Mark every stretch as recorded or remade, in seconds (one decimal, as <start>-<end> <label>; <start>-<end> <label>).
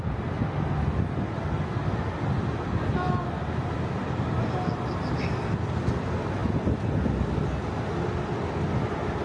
0.0-9.2 recorded